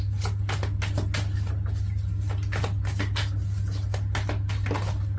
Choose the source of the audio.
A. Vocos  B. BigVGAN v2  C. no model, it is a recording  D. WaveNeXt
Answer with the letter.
C